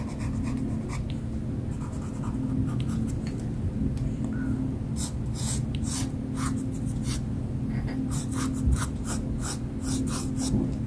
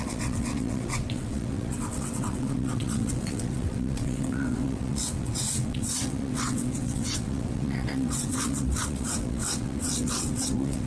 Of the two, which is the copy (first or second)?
second